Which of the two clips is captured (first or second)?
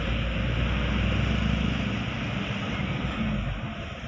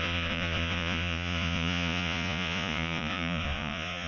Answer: first